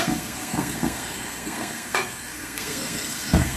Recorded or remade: remade